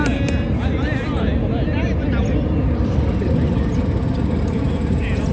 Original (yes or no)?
yes